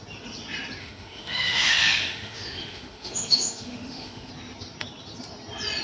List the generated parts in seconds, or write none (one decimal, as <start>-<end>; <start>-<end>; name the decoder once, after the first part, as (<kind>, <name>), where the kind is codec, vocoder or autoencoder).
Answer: 0.8-4.3 (autoencoder, DAC-VAE)